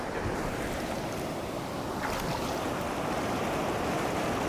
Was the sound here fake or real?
real